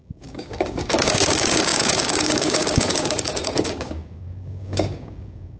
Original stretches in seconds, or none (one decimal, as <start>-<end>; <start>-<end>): none